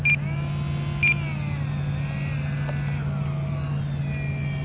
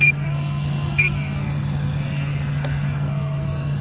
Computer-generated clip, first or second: second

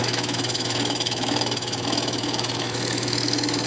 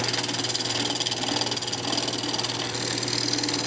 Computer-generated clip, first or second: first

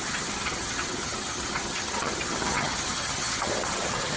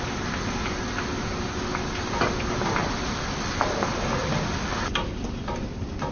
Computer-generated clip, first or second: first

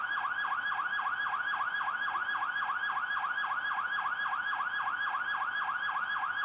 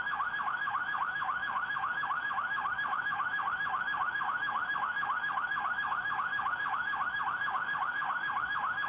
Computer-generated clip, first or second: second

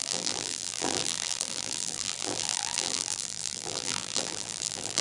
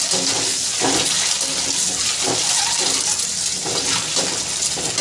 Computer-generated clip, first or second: first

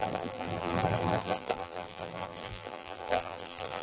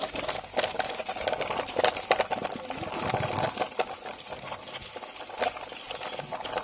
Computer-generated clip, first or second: first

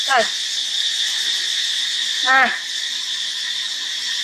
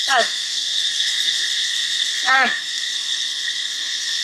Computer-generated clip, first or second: second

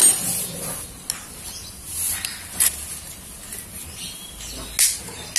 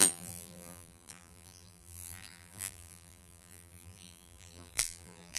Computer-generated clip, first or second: second